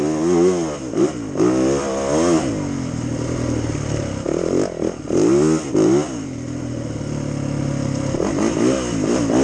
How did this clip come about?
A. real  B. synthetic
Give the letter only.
A